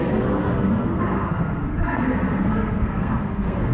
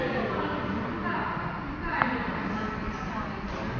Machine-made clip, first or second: first